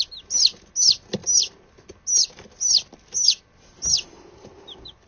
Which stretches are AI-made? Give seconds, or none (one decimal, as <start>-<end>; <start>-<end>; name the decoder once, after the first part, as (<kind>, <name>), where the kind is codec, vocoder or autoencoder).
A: none